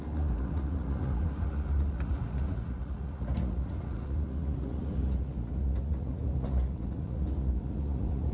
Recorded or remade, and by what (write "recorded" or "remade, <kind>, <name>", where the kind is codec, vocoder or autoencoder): remade, vocoder, Vocos